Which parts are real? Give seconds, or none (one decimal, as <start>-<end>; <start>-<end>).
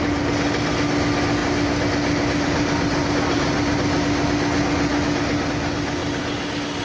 0.0-6.8